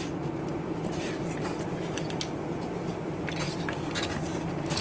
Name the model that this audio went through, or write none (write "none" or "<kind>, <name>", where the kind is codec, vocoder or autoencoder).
none